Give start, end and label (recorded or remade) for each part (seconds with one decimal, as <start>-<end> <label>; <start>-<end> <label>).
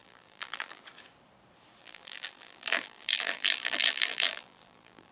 0.0-0.8 remade; 0.8-1.8 recorded; 1.8-5.1 remade